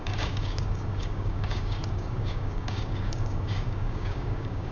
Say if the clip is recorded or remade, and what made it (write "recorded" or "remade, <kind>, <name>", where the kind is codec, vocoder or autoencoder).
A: remade, codec, DAC